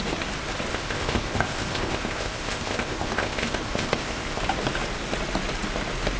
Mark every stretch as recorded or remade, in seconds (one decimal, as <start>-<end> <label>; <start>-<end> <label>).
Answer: 0.0-0.7 recorded; 0.7-4.4 remade; 4.4-6.2 recorded